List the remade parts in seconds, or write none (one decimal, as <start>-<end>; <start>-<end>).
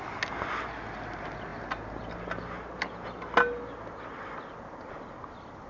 none